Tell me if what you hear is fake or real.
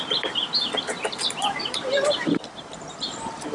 fake